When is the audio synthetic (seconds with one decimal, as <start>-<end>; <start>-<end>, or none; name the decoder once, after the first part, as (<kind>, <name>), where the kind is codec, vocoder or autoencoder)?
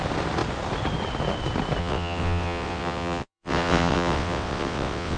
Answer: 1.8-5.2 (vocoder, WaveNeXt)